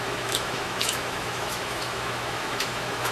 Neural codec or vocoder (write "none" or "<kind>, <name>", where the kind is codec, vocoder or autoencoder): autoencoder, DAC-VAE